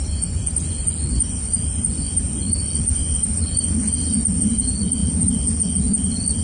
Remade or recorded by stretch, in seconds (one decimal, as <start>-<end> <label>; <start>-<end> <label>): 0.0-6.4 remade